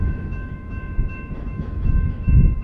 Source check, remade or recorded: remade